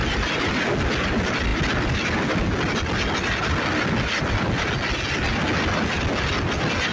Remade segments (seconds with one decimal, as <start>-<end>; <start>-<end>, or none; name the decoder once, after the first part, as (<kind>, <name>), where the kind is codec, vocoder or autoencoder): none